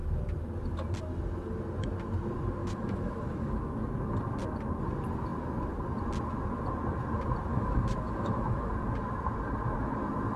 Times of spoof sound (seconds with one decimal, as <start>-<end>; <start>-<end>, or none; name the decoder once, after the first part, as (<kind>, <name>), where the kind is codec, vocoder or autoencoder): 2.6-3.9 (autoencoder, DAC-VAE); 7.5-8.7